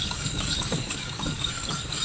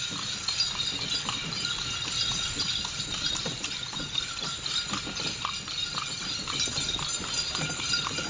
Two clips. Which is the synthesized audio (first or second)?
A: first